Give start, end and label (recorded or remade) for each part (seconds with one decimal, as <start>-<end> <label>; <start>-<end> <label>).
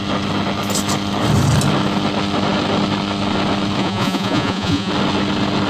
0.0-3.8 recorded; 3.8-4.9 remade; 4.9-5.7 recorded